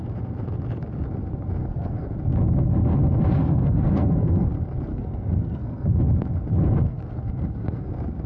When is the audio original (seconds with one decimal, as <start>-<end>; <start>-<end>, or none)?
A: 0.0-1.6; 2.1-3.4; 4.5-4.9; 6.0-6.8; 7.9-8.3